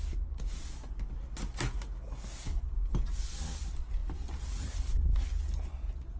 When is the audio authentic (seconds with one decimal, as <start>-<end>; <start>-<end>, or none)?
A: 0.0-6.2